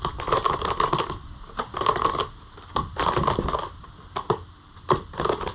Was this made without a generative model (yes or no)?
yes